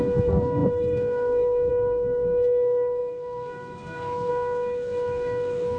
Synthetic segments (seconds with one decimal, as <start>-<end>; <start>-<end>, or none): 0.0-5.8